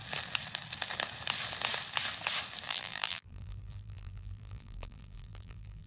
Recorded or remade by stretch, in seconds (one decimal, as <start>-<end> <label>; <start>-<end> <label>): 0.0-2.7 recorded; 2.7-5.9 remade